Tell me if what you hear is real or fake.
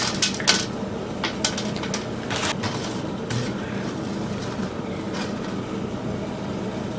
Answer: real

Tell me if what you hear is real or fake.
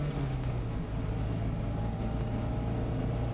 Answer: real